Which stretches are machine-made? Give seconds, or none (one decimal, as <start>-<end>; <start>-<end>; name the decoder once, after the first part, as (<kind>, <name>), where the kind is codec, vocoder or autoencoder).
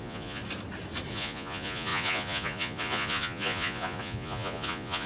0.0-0.4 (vocoder, Vocos); 1.1-5.1